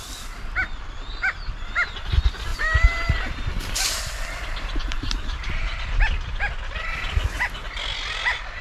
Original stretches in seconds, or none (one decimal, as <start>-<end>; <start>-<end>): 0.0-4.9; 5.8-8.6